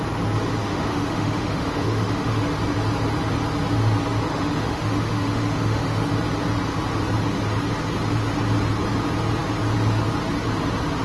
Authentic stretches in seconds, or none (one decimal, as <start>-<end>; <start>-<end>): 0.0-0.6; 2.4-4.3; 6.1-11.0